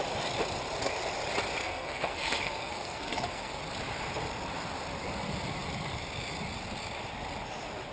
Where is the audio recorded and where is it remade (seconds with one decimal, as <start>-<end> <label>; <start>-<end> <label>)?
0.0-1.6 recorded; 1.6-3.6 remade; 3.6-7.9 recorded